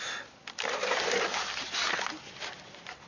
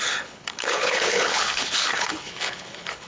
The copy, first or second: second